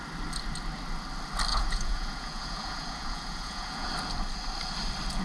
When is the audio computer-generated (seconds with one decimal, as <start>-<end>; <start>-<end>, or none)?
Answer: 1.5-3.9